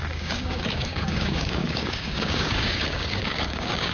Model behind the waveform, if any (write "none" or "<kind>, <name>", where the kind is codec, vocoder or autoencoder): codec, DAC